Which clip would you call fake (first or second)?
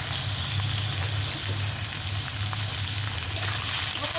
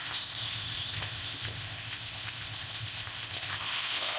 second